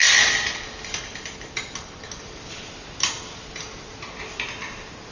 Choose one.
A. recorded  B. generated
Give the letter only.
A